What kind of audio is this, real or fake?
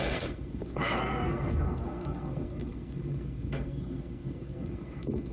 fake